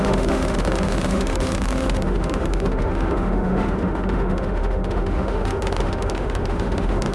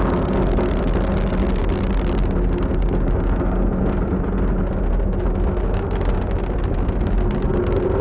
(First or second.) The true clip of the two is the second